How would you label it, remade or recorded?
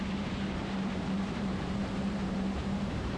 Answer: remade